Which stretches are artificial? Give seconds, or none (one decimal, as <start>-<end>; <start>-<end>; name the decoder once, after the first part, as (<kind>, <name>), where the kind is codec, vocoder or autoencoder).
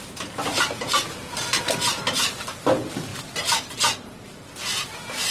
none